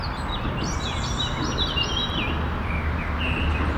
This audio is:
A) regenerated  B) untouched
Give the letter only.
B